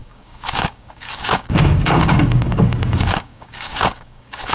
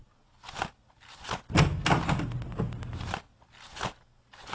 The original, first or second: second